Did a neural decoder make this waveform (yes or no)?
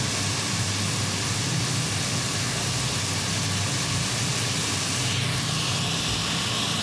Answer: no